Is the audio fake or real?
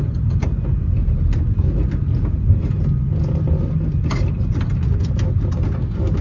real